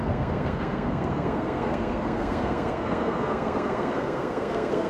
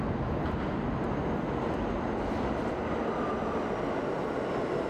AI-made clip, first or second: first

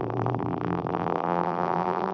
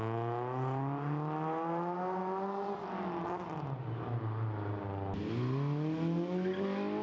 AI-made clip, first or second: first